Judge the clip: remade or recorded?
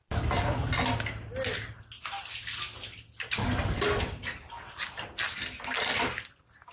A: recorded